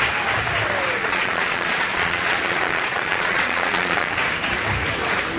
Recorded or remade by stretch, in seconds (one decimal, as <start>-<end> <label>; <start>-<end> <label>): 0.0-1.0 recorded; 1.0-4.2 remade; 4.2-5.4 recorded